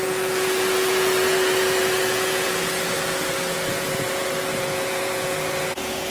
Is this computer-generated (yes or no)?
yes